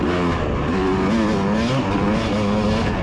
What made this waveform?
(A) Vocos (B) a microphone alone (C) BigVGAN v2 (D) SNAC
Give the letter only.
B